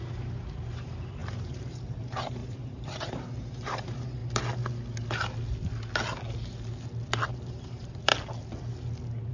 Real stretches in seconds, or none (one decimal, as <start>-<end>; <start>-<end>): 4.2-7.3; 8.1-9.3